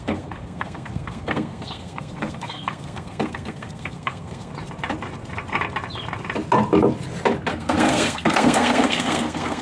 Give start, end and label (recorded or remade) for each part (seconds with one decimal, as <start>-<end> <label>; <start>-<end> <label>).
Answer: 0.0-4.5 remade; 4.5-7.5 recorded; 7.5-9.6 remade

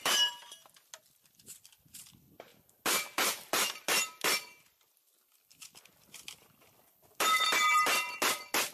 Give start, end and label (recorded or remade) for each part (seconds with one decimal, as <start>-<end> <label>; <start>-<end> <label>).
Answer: 0.0-8.7 recorded

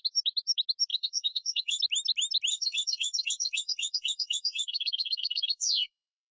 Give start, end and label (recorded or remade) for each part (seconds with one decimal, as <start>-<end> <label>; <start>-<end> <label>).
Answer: 0.0-0.9 recorded; 0.9-1.8 remade; 1.8-2.5 recorded; 2.5-6.3 remade

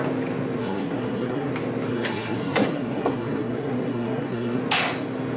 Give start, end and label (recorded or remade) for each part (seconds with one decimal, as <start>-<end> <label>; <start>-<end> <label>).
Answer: 0.0-0.6 recorded; 0.6-1.5 remade; 1.5-1.9 recorded; 1.9-4.6 remade; 4.6-5.4 recorded

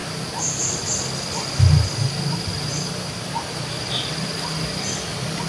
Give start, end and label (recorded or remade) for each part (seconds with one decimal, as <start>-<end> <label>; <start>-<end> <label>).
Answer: 0.0-5.5 recorded

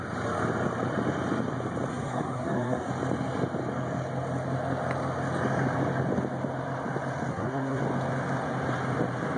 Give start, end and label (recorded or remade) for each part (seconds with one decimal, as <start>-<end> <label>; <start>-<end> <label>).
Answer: 0.0-1.9 recorded; 1.9-2.9 remade; 2.9-7.3 recorded; 7.3-7.8 remade; 7.8-9.4 recorded

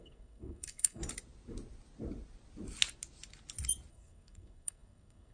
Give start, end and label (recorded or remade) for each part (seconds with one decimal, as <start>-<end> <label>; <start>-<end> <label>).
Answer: 0.0-1.0 remade; 1.0-3.9 recorded; 3.9-5.3 remade

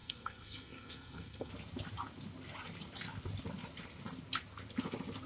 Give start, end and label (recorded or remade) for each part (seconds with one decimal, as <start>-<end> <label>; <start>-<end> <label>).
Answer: 0.0-1.5 remade; 1.5-5.3 recorded